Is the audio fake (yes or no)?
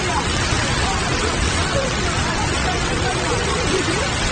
yes